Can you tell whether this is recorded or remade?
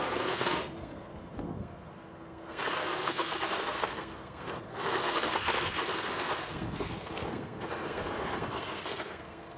remade